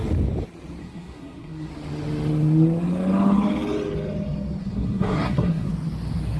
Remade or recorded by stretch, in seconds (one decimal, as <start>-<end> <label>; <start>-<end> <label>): 0.0-0.8 recorded; 0.8-1.7 remade; 1.7-4.6 recorded; 4.6-5.7 remade; 5.7-6.4 recorded